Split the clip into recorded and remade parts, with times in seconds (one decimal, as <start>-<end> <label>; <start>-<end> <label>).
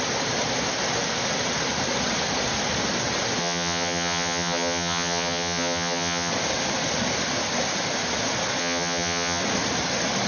0.0-3.4 recorded; 3.4-6.3 remade; 6.3-8.6 recorded; 8.6-9.4 remade; 9.4-10.3 recorded